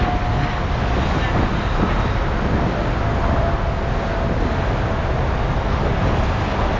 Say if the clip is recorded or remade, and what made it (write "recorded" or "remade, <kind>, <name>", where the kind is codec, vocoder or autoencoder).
recorded